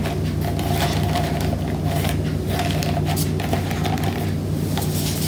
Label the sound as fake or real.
real